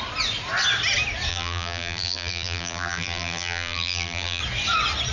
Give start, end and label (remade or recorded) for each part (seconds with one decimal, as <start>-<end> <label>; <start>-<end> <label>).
0.0-1.3 recorded; 1.3-4.4 remade; 4.4-5.1 recorded